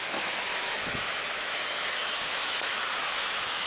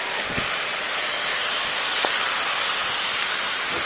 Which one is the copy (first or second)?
first